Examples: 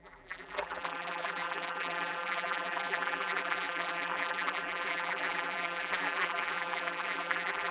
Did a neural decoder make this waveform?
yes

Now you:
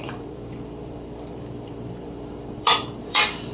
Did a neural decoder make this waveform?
yes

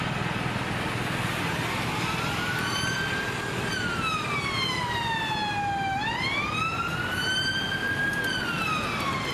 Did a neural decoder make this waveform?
no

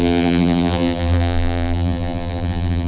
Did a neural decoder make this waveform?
yes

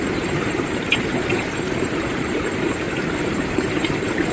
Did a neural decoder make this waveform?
yes